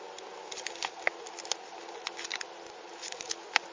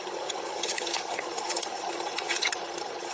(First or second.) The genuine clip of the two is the first